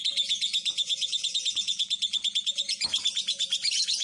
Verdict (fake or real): fake